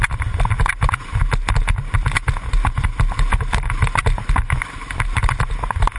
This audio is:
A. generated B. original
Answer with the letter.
B